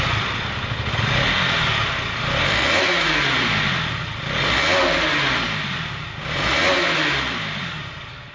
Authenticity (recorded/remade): recorded